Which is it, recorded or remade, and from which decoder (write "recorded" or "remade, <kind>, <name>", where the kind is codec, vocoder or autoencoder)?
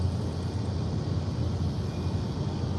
recorded